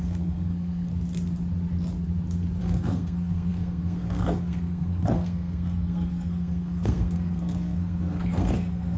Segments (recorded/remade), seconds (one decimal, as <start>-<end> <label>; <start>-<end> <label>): 0.0-0.9 remade; 0.9-2.6 recorded; 2.6-9.0 remade